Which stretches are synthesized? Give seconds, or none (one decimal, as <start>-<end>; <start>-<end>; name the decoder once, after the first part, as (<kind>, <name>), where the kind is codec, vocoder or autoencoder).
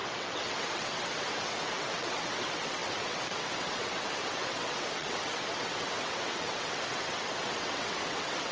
0.0-8.5 (vocoder, WaveNeXt)